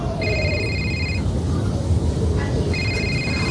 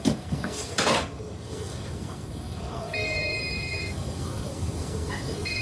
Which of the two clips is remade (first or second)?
second